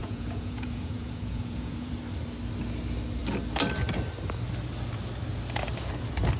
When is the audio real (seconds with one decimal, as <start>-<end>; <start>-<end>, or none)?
1.9-6.4